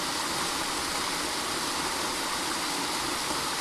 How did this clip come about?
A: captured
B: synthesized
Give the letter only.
A